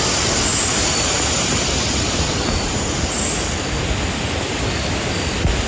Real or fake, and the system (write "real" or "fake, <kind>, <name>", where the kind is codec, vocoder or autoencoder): real